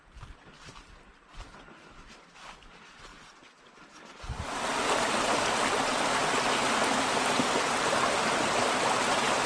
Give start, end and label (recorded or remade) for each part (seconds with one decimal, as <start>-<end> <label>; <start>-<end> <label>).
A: 0.0-9.5 recorded